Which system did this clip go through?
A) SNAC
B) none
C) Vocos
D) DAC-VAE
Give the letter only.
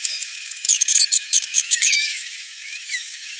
D